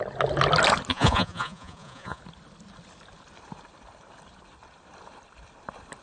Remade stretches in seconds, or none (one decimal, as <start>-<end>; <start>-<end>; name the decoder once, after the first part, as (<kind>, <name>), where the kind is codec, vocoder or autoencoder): 0.9-2.2 (vocoder, Vocos)